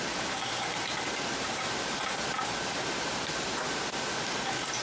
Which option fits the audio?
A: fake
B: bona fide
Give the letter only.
B